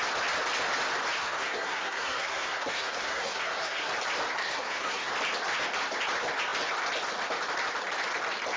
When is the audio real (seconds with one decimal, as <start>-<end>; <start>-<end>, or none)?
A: 0.0-1.2; 3.9-4.4; 5.1-8.6